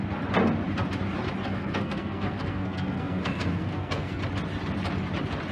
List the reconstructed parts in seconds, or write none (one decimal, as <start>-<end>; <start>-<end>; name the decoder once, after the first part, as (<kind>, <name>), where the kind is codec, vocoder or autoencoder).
1.4-4.2 (codec, SNAC)